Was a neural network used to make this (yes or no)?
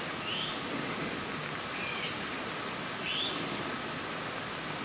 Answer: no